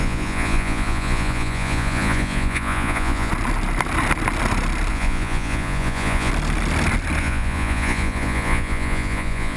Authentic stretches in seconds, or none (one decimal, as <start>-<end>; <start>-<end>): 3.3-4.9; 6.3-7.2